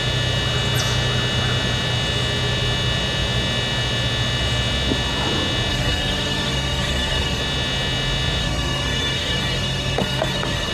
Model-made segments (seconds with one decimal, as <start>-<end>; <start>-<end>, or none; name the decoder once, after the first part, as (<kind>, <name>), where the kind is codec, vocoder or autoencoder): 5.7-7.4 (codec, SNAC); 8.4-10.7